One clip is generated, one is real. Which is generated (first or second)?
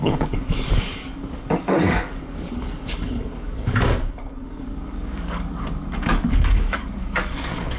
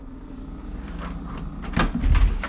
first